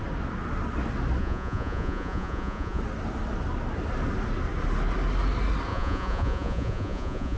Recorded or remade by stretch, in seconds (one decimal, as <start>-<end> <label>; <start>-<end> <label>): 0.0-1.2 recorded; 1.2-2.8 remade; 2.8-5.7 recorded; 5.7-7.4 remade